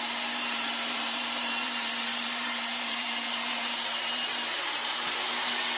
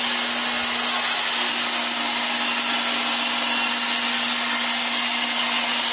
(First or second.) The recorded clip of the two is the second